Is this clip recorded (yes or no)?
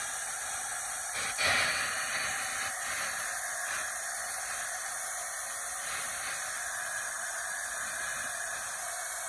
no